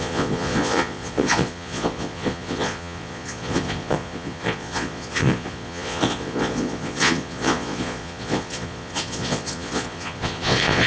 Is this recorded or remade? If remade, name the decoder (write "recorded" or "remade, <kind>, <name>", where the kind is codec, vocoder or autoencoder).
remade, vocoder, Vocos